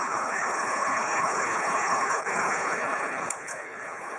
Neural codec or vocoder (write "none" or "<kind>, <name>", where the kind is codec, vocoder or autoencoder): codec, HILCodec